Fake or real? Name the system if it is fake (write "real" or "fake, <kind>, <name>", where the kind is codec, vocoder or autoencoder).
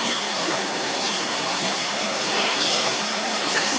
fake, codec, SNAC